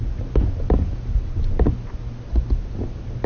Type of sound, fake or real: real